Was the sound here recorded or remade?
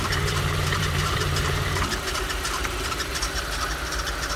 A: remade